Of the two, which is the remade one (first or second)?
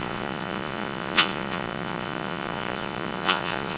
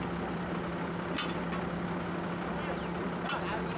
first